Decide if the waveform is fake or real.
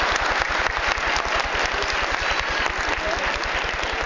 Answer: real